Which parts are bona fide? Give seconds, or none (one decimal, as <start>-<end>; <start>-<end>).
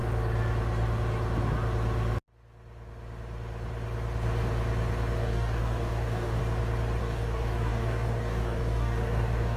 0.0-5.1; 6.4-7.0